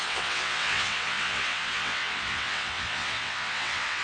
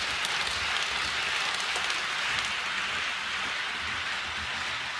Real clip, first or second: second